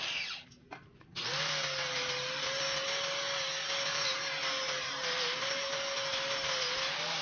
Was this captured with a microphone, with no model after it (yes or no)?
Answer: yes